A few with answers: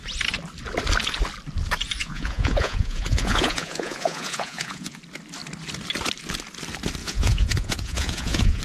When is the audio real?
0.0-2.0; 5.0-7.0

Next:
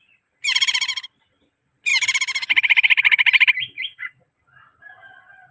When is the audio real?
0.0-5.5

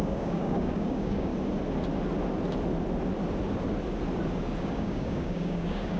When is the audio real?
1.3-4.6